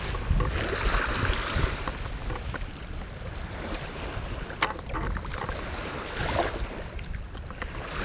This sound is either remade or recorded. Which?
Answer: recorded